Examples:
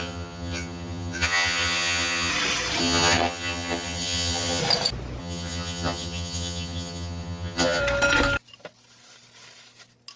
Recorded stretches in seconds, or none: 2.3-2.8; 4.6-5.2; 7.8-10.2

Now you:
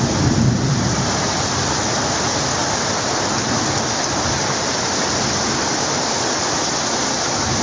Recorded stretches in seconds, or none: 0.0-7.6